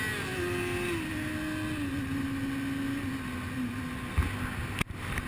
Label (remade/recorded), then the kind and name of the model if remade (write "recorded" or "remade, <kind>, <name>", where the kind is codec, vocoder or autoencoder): recorded